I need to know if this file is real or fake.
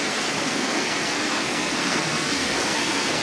fake